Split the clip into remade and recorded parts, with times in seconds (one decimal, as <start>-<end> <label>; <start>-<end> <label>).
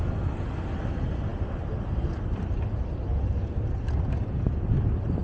0.0-5.2 recorded